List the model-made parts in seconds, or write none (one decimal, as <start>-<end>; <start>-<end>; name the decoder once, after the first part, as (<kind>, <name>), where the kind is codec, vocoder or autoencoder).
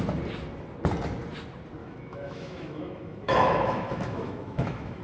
1.8-5.0 (autoencoder, DAC-VAE)